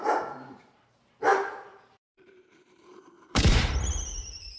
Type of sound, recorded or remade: remade